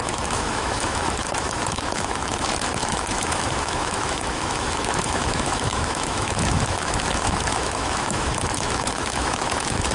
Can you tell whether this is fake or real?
fake